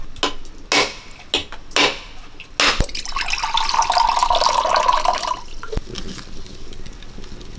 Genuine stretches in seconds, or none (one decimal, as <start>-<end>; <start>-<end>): 0.0-7.6